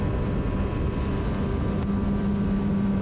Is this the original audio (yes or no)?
yes